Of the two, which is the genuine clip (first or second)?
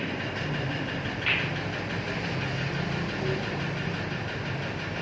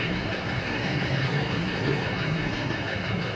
first